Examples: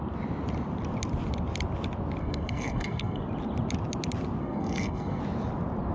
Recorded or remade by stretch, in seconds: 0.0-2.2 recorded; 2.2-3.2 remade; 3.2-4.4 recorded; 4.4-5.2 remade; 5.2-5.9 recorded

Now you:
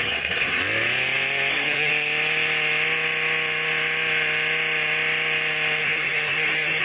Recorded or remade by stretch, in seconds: 0.0-0.6 remade; 0.6-1.5 recorded; 1.5-1.9 remade; 1.9-5.8 recorded; 5.8-6.8 remade

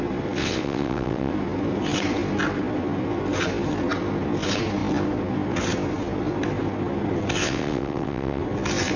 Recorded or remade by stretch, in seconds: 0.0-0.4 recorded; 0.4-1.3 remade; 1.3-7.4 recorded; 7.4-8.4 remade; 8.4-9.0 recorded

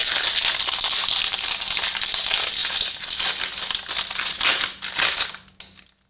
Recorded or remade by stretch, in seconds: 0.0-6.1 recorded

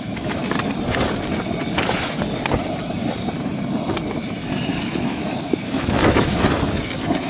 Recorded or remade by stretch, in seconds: 0.0-0.4 remade; 0.4-4.8 recorded; 4.8-7.3 remade

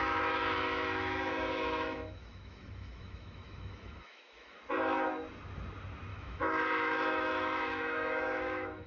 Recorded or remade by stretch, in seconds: 0.0-4.6 remade; 4.6-6.1 recorded; 6.1-8.9 remade